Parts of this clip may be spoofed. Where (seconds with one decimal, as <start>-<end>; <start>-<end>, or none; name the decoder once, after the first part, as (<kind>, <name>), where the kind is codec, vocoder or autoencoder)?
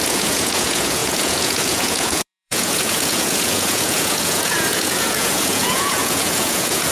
0.0-6.9 (vocoder, Vocos)